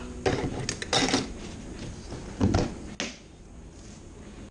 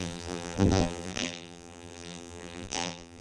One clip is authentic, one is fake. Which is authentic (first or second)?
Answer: first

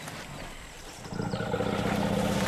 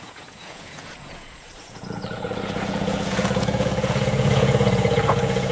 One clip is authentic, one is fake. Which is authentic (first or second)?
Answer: first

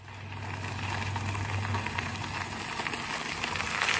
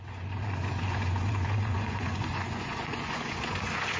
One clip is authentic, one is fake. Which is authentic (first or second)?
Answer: first